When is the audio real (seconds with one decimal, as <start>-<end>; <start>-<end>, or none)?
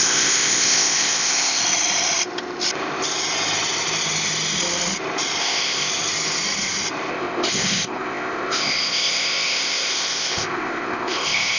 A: 1.6-5.4; 5.9-7.1